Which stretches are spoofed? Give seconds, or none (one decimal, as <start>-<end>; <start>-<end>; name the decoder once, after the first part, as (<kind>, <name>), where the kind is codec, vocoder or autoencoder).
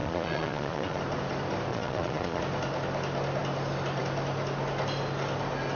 0.0-1.0 (vocoder, Vocos); 1.7-2.4